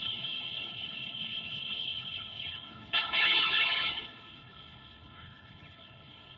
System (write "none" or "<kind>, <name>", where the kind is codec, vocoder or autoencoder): codec, HILCodec